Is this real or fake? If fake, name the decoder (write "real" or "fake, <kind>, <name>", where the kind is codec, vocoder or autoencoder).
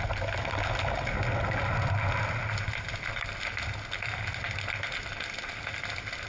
real